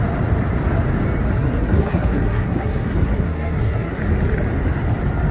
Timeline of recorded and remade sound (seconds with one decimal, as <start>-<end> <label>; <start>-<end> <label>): 0.0-1.3 recorded; 1.3-4.0 remade; 4.0-5.3 recorded